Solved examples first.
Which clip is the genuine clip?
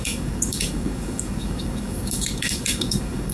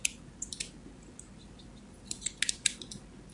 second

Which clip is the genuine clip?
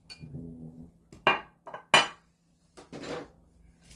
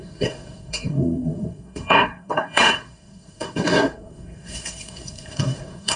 first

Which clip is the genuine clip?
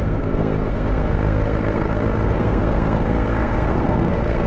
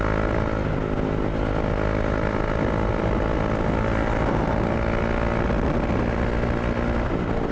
second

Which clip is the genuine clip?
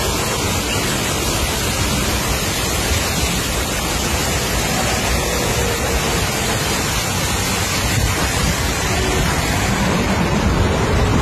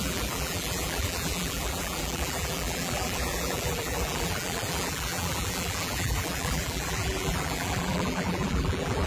first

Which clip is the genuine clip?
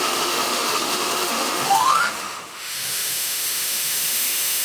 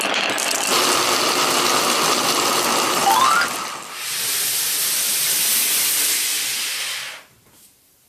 second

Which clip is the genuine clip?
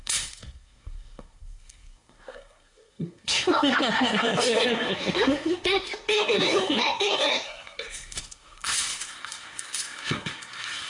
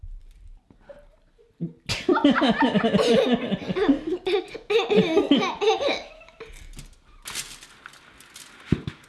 second